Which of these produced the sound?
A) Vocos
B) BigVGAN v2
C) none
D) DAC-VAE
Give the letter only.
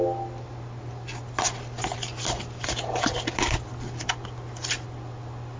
C